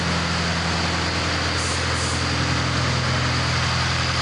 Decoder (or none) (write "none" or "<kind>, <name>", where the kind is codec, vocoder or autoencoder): none